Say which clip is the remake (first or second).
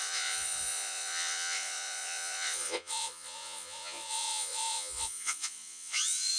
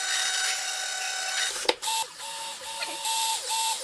first